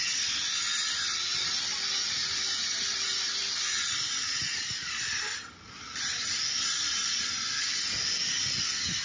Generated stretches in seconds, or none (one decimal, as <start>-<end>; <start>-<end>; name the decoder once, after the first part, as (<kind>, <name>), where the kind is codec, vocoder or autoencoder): none